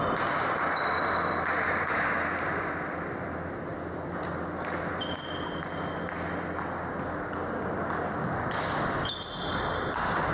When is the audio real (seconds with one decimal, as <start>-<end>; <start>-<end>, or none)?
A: 0.0-10.3